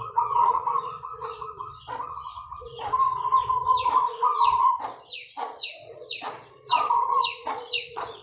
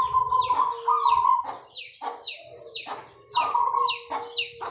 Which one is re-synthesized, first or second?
first